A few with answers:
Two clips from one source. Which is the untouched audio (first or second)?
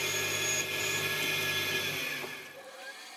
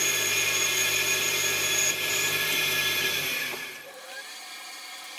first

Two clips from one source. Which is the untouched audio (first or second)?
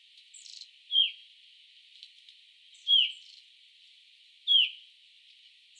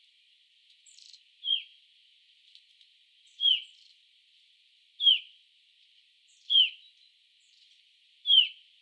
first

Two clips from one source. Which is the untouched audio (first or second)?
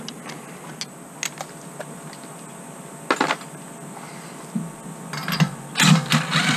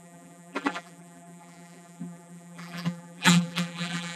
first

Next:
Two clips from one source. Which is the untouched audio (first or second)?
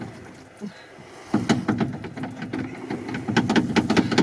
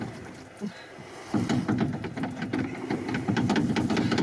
first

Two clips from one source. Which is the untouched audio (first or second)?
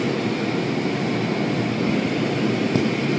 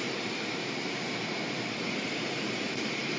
first